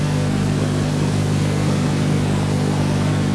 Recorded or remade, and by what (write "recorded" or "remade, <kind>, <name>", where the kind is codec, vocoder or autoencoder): remade, codec, SNAC